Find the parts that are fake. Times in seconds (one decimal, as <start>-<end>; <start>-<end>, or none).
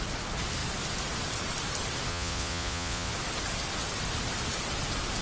2.1-3.1